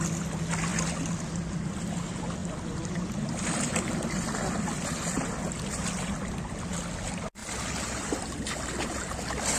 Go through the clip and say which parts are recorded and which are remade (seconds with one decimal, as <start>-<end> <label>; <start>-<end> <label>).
0.0-2.4 recorded; 2.4-3.8 remade; 3.8-7.4 recorded; 7.4-8.3 remade; 8.3-9.6 recorded